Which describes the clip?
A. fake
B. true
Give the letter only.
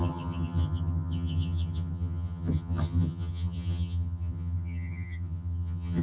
A